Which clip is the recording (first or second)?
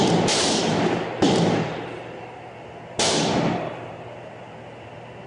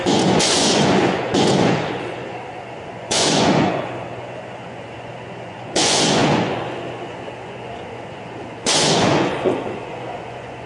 first